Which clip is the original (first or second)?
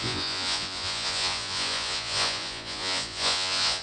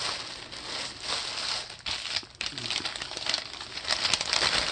second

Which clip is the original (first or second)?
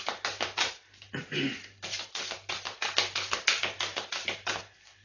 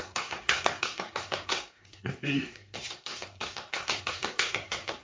first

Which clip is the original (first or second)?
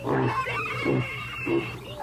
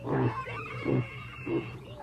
first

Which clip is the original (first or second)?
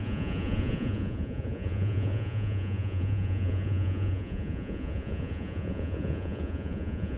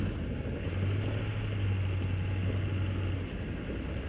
second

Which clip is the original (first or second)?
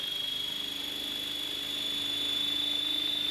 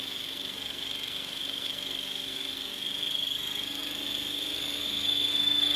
first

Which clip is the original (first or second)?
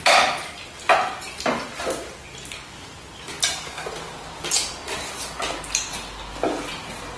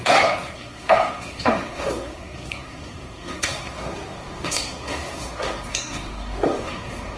first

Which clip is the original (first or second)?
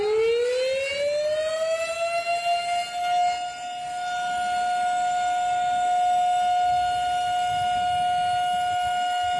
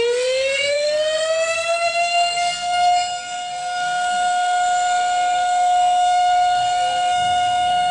first